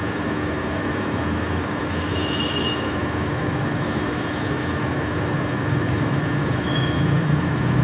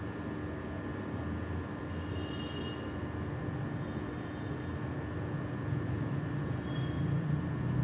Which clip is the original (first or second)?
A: second